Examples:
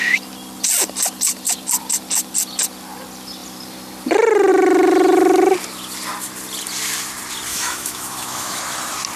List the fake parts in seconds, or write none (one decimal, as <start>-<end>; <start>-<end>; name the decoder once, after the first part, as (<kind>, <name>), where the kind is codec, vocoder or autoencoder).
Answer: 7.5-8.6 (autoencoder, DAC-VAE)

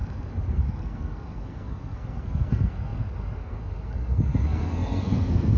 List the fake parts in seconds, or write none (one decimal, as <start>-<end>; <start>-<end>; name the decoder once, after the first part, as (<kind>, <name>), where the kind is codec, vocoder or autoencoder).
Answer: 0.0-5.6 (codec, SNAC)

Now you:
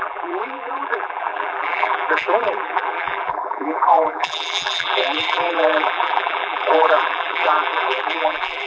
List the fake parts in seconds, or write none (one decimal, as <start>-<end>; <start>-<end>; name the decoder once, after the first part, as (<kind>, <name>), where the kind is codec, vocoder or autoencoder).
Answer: 0.0-8.7 (vocoder, BigVGAN v2)

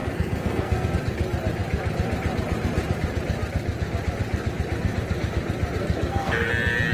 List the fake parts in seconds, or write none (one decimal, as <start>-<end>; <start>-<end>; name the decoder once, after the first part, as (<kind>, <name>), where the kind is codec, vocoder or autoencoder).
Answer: 0.0-0.9 (codec, SNAC); 5.8-6.5